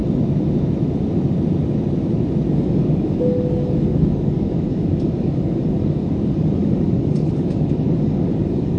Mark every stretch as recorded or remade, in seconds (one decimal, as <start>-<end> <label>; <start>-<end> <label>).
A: 0.0-2.5 recorded; 2.5-8.8 remade